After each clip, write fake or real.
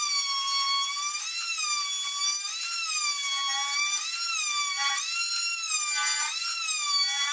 real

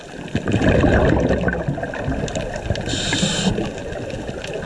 real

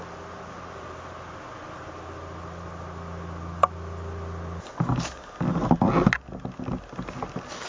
real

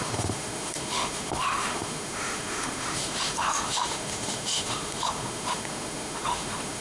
fake